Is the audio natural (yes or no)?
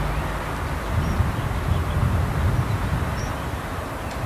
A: yes